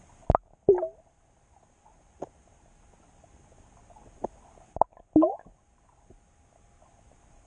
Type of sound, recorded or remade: recorded